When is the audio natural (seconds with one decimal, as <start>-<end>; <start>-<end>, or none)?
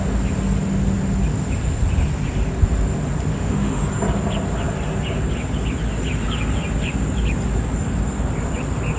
0.0-3.3; 3.8-9.0